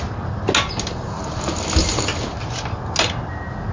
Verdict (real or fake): real